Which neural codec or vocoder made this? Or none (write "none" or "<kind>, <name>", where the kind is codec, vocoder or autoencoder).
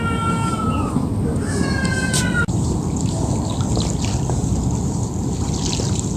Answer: none